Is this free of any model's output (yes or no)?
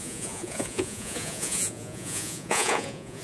no